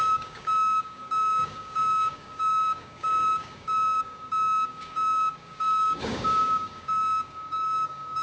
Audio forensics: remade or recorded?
remade